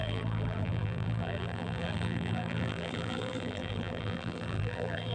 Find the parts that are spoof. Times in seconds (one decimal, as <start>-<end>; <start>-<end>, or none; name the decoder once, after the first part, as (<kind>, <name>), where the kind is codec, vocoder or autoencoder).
0.0-5.1 (vocoder, BigVGAN v2)